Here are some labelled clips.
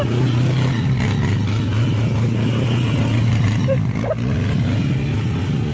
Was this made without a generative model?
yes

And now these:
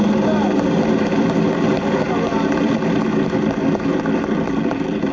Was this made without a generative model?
yes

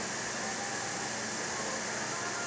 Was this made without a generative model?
yes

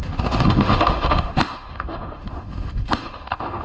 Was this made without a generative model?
no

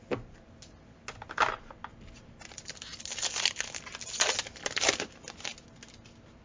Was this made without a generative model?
yes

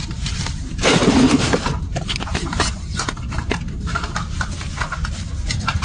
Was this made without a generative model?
no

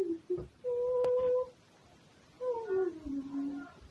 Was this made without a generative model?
yes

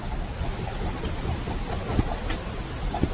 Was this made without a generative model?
yes